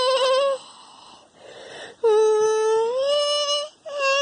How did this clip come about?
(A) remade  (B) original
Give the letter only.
B